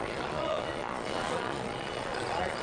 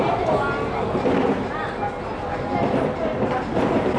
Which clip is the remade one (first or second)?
first